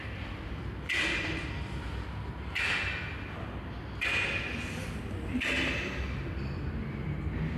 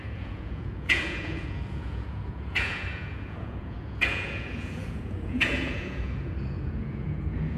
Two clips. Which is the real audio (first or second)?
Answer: first